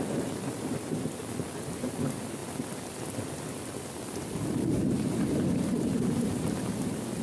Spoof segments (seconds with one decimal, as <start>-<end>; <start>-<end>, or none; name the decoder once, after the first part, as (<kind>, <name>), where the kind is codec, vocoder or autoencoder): 5.9-6.6 (vocoder, BigVGAN v2)

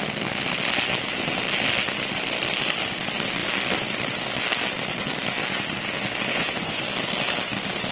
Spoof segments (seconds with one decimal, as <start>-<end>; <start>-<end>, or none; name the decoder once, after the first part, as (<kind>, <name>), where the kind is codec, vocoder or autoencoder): 6.3-6.8 (vocoder, Vocos)

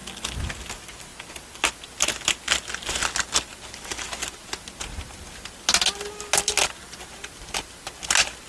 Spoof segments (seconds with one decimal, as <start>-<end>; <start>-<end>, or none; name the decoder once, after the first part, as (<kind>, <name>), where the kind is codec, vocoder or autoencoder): none

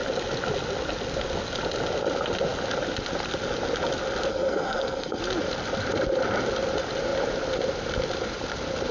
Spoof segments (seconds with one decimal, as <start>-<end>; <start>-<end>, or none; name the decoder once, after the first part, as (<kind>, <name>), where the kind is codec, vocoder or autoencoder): 4.3-5.2 (codec, SNAC)